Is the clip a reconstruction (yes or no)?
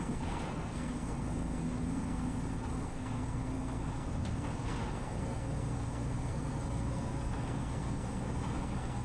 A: yes